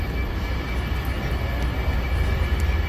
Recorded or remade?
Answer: recorded